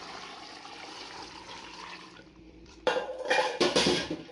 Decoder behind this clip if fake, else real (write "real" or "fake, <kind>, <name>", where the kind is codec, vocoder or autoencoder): fake, vocoder, BigVGAN v2